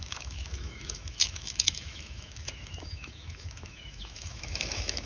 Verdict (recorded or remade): remade